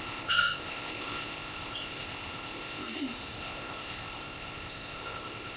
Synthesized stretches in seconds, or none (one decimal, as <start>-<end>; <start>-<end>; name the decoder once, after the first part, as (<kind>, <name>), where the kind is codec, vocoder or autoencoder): 0.0-5.6 (codec, ZipCodec)